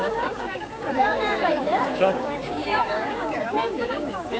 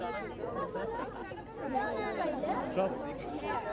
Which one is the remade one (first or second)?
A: first